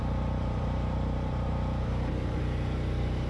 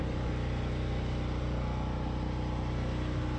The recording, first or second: second